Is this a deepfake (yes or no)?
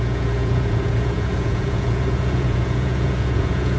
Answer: yes